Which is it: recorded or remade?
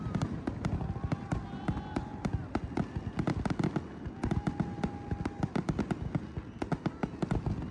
recorded